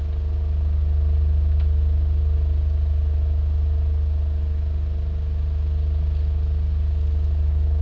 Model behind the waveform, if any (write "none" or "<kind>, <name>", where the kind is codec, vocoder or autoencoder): none